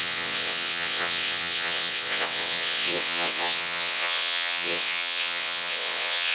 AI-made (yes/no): yes